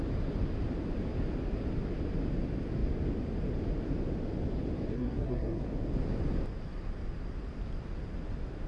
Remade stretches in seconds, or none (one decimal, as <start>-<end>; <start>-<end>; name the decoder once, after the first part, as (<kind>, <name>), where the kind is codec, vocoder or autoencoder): 4.9-5.6 (codec, SNAC)